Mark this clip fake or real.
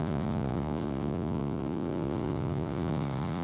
fake